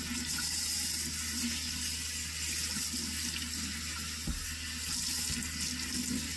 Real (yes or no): yes